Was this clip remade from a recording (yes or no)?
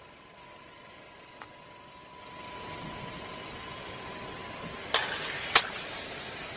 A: no